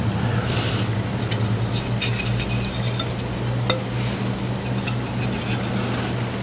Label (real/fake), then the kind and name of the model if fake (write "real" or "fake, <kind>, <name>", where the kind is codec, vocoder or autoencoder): real